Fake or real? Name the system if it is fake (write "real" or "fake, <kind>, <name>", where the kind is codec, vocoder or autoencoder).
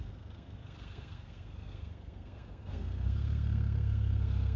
fake, codec, SNAC